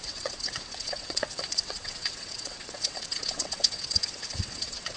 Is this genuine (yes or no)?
no